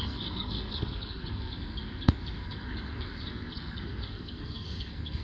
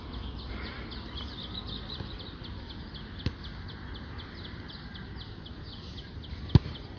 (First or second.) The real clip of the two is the second